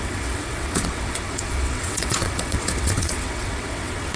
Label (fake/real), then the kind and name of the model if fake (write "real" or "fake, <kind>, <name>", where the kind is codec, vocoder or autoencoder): fake, vocoder, WaveNeXt